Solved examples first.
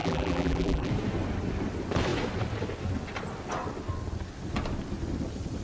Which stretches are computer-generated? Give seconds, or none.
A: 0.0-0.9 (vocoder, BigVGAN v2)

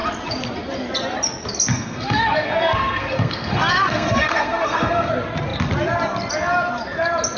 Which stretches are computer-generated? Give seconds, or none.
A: 1.7-5.1 (codec, SNAC)

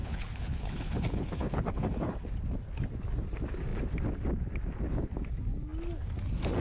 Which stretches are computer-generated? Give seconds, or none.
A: 0.0-2.3 (codec, HILCodec)

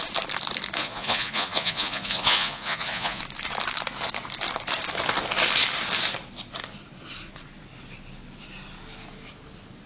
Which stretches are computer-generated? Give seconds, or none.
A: 0.8-3.2 (vocoder, Vocos)

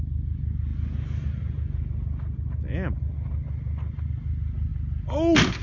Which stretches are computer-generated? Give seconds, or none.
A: none

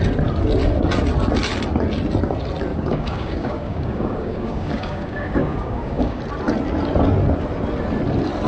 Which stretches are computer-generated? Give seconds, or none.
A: 2.7-6.2 (codec, DAC)

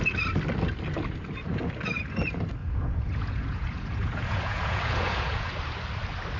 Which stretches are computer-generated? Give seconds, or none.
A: 2.6-5.5 (vocoder, Vocos)